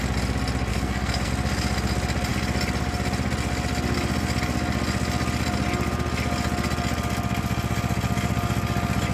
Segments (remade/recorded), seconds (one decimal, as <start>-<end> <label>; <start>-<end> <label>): 0.0-0.7 recorded; 0.7-1.3 remade; 1.3-9.1 recorded